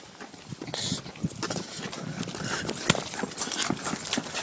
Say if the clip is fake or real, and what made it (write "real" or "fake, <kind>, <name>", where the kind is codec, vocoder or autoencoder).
real